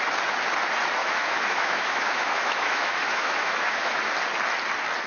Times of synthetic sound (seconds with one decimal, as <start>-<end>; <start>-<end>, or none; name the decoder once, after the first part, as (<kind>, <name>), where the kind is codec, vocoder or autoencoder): 1.0-4.1 (autoencoder, DAC-VAE)

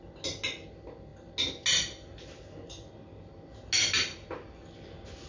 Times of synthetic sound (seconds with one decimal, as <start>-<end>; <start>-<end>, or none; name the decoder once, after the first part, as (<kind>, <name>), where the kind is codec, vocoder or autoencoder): none

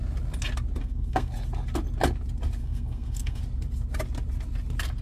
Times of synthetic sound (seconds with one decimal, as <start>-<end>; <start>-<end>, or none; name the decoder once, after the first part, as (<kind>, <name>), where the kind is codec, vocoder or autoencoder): 0.8-1.3 (codec, SNAC); 2.6-3.4

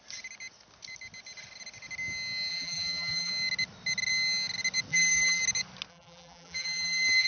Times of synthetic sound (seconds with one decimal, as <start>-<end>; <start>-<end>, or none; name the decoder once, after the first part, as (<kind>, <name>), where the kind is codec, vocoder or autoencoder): 2.5-3.3 (vocoder, BigVGAN v2); 4.9-5.4; 5.9-7.3

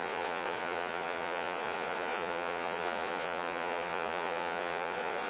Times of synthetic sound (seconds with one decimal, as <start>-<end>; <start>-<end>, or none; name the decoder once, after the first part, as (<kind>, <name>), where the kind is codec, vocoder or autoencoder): 0.0-5.3 (vocoder, Vocos)

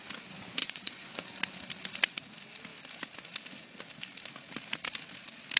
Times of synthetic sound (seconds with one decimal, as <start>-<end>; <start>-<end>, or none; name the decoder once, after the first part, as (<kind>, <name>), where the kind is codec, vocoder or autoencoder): 0.6-1.2 (vocoder, Vocos)